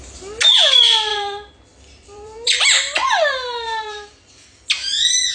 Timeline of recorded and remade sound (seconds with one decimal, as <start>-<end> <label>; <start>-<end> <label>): 0.0-1.1 recorded; 1.1-4.3 remade; 4.3-5.3 recorded